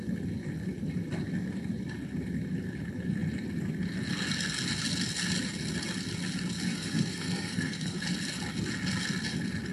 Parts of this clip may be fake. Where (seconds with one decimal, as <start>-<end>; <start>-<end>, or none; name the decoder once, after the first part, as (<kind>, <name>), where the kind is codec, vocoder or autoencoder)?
6.7-8.0 (codec, SNAC)